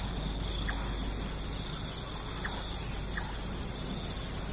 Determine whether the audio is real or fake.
real